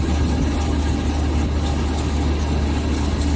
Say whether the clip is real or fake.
real